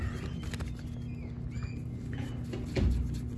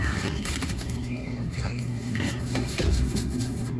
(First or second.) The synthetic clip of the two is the second